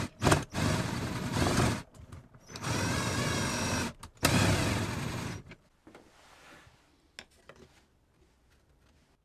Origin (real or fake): real